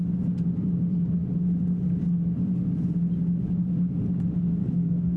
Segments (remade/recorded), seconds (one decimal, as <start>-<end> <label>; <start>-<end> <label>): 0.0-4.6 recorded; 4.6-5.2 remade